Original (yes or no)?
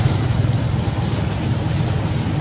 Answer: yes